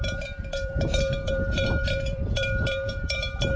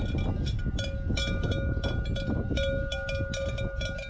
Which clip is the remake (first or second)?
first